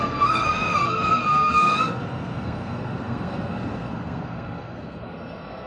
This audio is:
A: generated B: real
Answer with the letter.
A